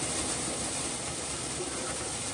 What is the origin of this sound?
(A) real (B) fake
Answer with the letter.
A